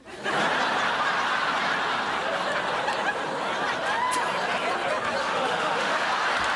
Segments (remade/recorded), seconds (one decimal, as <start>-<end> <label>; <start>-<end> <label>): 0.0-5.2 recorded; 5.2-6.1 remade; 6.1-6.6 recorded